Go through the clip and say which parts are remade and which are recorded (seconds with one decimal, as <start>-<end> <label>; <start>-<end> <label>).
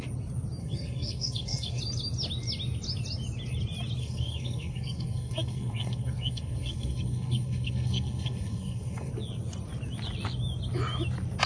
0.0-0.6 recorded; 0.6-1.8 remade; 1.8-4.0 recorded; 4.0-9.1 remade; 9.1-11.5 recorded